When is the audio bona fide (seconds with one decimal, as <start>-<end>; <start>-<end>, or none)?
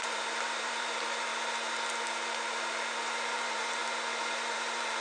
1.3-3.4; 3.8-4.3